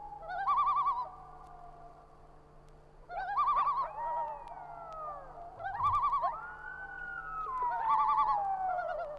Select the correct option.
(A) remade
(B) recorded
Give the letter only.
B